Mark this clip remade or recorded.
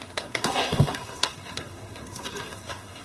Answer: remade